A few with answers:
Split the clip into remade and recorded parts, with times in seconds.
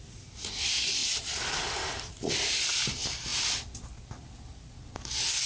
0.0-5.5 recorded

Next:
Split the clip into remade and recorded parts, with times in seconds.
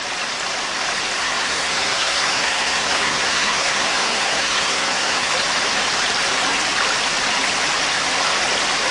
0.0-1.2 recorded; 1.2-5.3 remade; 5.3-8.9 recorded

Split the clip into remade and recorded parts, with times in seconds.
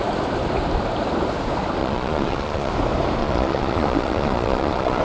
0.0-1.8 recorded; 1.8-2.7 remade; 2.7-3.2 recorded; 3.2-5.0 remade